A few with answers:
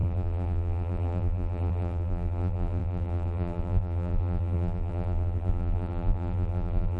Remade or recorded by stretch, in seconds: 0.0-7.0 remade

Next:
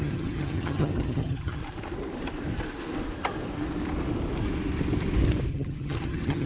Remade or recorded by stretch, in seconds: 0.0-1.6 remade; 1.6-5.5 recorded; 5.5-6.5 remade

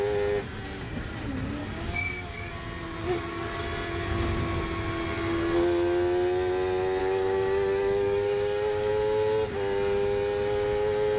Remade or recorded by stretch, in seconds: 0.0-1.6 recorded; 1.6-2.5 remade; 2.5-3.0 recorded; 3.0-3.6 remade; 3.6-7.0 recorded; 7.0-8.9 remade; 8.9-11.2 recorded

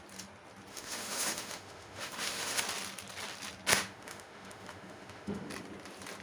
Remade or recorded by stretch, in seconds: 0.0-0.7 recorded; 0.7-2.6 remade; 2.6-3.7 recorded; 3.7-5.5 remade; 5.5-6.2 recorded

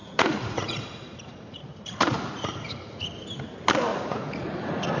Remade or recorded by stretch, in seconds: 0.0-3.0 remade; 3.0-3.9 recorded; 3.9-5.0 remade